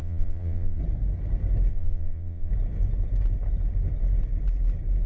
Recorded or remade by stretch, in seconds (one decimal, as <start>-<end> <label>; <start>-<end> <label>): 0.0-0.8 remade; 0.8-1.7 recorded; 1.7-2.5 remade; 2.5-5.1 recorded